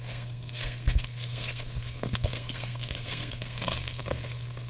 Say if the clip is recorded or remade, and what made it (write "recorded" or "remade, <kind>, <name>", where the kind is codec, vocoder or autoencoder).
remade, codec, SNAC